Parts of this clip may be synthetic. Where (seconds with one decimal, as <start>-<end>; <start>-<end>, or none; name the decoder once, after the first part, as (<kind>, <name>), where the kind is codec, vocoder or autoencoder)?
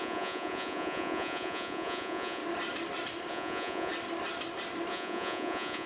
0.0-2.4 (vocoder, Vocos); 3.3-3.9; 4.9-5.9